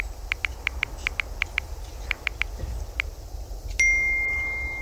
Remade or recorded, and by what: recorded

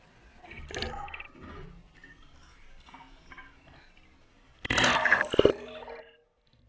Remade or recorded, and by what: recorded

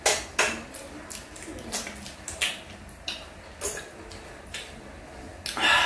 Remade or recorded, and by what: recorded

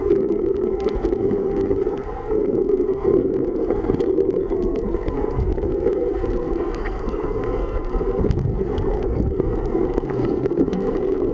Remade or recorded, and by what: remade, codec, SNAC